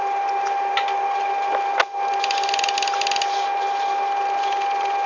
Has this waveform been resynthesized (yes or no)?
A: no